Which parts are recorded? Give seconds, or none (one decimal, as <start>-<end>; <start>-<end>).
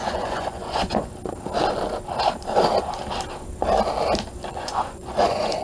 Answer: 1.1-4.5